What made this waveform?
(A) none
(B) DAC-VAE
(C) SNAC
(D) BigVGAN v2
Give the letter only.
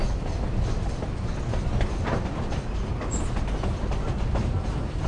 A